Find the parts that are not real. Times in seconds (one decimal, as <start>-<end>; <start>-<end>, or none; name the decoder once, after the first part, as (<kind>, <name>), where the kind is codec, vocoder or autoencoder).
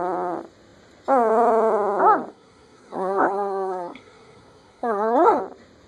2.3-5.4 (codec, SNAC)